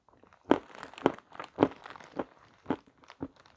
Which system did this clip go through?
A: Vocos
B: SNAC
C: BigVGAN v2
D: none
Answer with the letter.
D